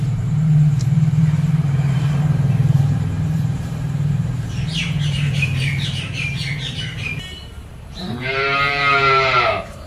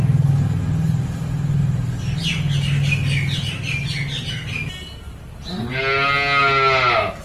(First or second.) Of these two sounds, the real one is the second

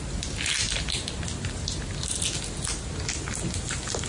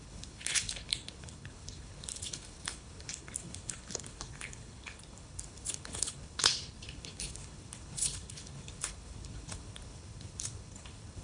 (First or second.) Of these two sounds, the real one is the first